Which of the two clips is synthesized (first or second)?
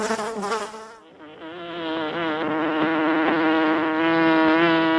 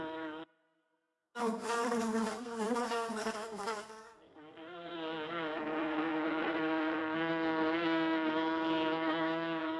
second